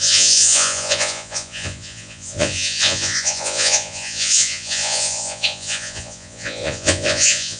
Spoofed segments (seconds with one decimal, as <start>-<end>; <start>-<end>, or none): 0.0-7.6